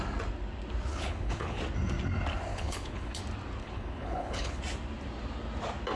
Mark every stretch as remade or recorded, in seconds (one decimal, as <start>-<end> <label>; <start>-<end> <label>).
0.0-0.9 recorded; 0.9-1.6 remade; 1.6-2.5 recorded; 2.5-3.2 remade; 3.2-3.6 recorded; 3.6-4.6 remade; 4.6-6.0 recorded